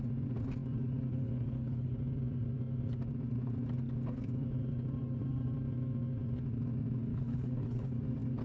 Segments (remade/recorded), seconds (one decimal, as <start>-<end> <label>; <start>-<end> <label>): 0.0-1.1 recorded; 1.1-1.9 remade; 1.9-7.1 recorded; 7.1-8.0 remade; 8.0-8.4 recorded